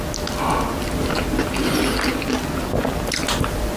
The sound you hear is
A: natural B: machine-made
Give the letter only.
A